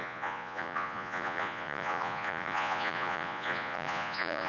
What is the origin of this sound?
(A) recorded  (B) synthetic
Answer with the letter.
B